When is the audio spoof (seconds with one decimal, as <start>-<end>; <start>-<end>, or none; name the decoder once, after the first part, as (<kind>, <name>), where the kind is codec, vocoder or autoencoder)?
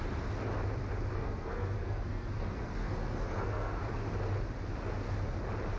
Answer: 1.1-3.8 (codec, SNAC)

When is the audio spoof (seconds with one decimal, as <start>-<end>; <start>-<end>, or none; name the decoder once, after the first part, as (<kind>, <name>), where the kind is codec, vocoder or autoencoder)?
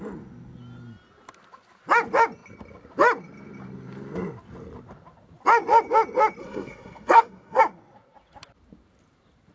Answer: 6.4-7.6 (codec, SNAC)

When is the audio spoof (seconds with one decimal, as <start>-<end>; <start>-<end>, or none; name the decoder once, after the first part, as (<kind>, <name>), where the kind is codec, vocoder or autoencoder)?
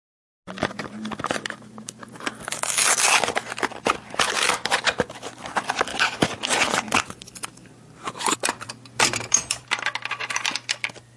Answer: none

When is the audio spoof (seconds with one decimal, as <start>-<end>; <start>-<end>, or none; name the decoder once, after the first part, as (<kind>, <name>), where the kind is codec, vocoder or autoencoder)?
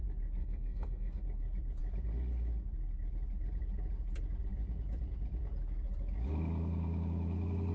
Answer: 0.4-1.2 (codec, SNAC)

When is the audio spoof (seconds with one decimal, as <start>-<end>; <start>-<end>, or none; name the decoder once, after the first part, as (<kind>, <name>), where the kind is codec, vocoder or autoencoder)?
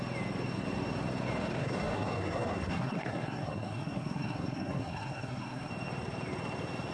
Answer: 1.6-5.7 (codec, SNAC)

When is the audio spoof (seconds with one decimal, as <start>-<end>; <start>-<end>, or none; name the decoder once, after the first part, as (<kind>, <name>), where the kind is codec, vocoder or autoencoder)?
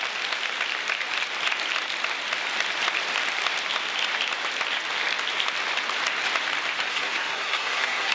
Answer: 6.9-8.1 (codec, SNAC)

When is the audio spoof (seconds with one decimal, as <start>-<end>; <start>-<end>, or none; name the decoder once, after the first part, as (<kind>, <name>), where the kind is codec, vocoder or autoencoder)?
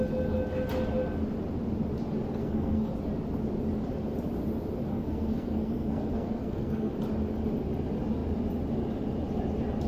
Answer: 2.4-2.9 (codec, SNAC); 4.9-6.9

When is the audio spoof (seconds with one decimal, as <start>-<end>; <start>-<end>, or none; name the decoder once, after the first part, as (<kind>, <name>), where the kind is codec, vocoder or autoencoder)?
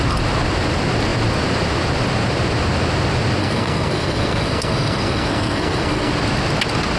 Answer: 3.4-6.1 (codec, SNAC)